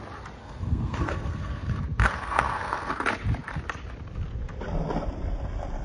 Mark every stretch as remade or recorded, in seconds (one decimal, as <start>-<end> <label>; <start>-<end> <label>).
0.0-0.4 recorded; 0.4-2.9 remade; 2.9-5.8 recorded